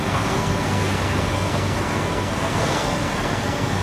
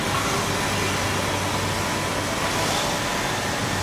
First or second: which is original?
second